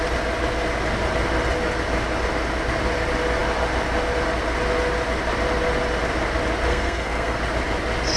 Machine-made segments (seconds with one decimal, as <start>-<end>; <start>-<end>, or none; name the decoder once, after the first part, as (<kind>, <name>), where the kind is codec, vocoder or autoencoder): 6.7-7.4 (codec, SNAC)